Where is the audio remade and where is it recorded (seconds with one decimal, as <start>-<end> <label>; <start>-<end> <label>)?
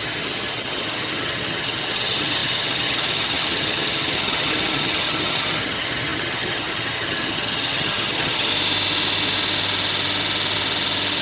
0.0-8.5 remade; 8.5-11.2 recorded